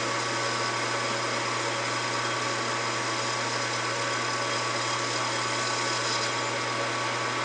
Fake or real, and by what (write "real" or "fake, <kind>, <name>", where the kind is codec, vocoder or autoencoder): real